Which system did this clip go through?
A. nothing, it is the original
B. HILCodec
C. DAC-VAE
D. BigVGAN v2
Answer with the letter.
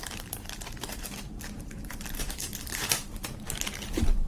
D